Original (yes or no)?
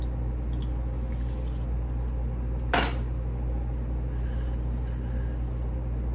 yes